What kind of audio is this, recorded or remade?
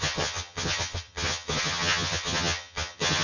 remade